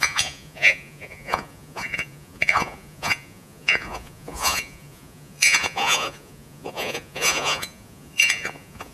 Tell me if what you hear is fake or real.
fake